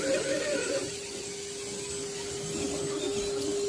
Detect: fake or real real